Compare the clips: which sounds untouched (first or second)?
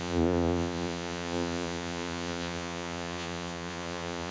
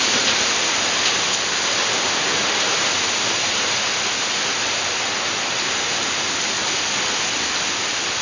second